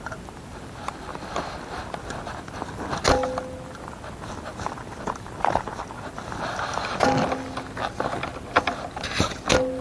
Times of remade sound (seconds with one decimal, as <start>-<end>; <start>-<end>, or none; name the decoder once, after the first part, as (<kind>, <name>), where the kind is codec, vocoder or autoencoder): none